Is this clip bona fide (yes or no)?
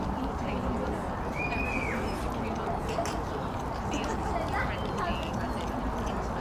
yes